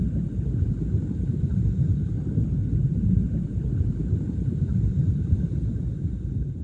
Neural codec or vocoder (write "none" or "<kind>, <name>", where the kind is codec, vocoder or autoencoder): none